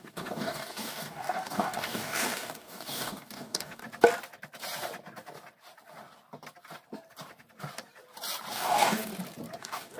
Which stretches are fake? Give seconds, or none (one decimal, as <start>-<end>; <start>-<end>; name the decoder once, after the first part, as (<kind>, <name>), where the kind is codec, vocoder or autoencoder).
0.0-3.8 (codec, DAC); 8.5-9.1; 9.6-10.0